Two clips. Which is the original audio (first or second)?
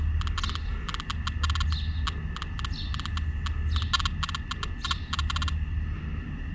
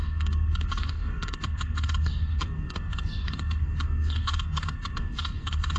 first